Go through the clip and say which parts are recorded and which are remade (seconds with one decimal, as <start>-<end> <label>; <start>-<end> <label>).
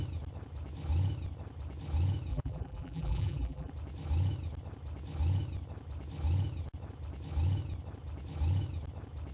0.0-2.3 recorded; 2.3-3.7 remade; 3.7-9.3 recorded